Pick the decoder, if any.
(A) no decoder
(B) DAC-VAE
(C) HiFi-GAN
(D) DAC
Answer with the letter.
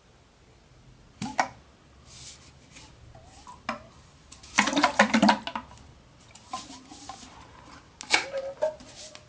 A